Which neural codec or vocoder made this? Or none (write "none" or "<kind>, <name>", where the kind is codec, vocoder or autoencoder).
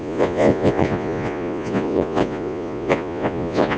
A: vocoder, Vocos